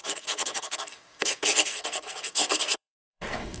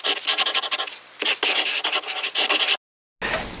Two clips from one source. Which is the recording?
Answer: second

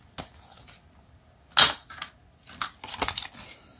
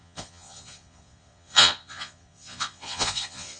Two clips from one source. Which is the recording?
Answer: first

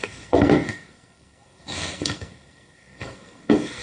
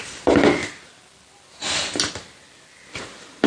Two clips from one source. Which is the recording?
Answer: second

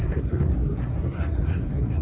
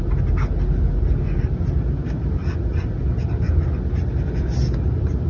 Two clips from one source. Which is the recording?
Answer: second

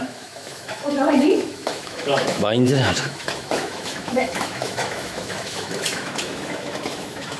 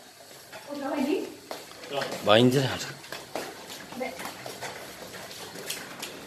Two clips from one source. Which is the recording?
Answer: second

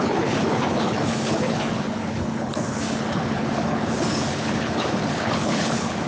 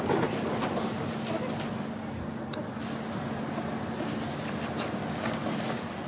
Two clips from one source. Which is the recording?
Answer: second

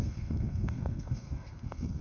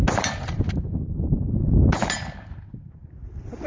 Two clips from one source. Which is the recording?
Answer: second